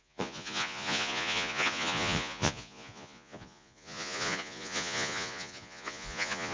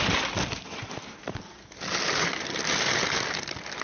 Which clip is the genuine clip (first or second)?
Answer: second